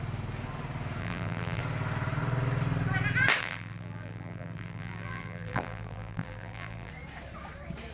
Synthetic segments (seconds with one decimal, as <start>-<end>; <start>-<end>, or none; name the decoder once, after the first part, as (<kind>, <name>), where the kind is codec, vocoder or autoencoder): 1.0-1.6 (vocoder, BigVGAN v2); 3.4-6.9